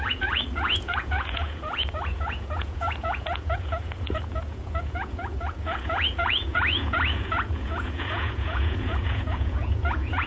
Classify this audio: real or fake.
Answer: fake